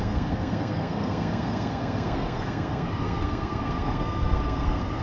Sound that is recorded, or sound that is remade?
remade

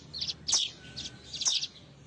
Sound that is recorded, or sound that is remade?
recorded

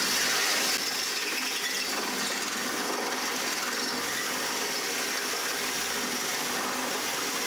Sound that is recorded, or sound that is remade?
recorded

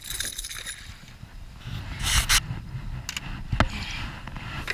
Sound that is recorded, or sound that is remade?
recorded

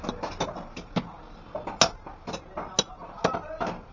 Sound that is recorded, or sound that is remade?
recorded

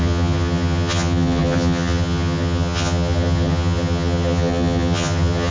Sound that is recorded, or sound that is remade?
remade